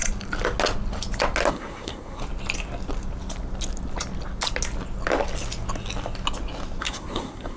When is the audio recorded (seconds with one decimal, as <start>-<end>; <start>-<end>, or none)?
0.0-1.5; 2.2-6.8